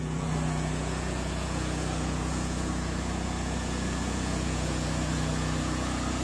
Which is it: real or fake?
fake